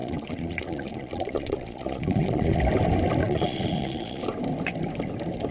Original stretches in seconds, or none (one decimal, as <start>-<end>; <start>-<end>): 2.6-3.2; 4.2-5.5